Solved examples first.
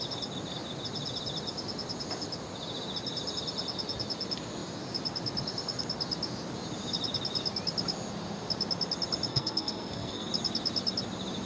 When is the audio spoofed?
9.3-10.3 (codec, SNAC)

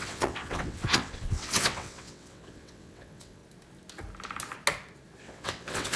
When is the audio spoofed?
0.0-3.4 (vocoder, WaveNeXt); 5.2-6.0

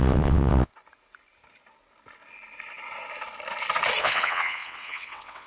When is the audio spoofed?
0.0-0.7 (vocoder, WaveNeXt); 4.0-5.5

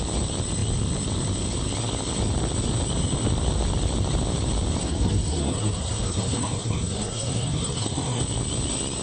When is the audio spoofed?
4.8-8.2 (codec, SNAC)